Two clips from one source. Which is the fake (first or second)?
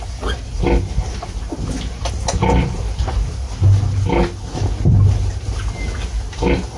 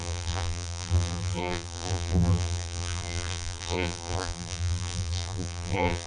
second